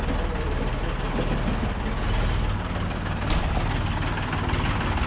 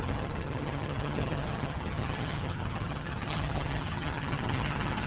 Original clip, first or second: first